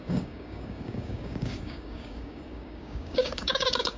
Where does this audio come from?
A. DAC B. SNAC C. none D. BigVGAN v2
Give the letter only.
A